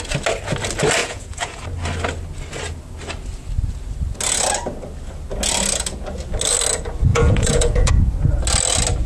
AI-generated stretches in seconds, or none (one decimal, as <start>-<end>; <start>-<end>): 1.0-1.6; 7.1-7.9